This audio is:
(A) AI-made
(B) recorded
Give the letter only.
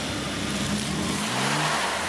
B